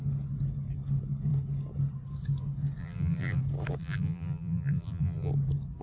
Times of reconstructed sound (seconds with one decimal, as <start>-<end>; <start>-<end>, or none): 2.8-3.4; 3.8-5.3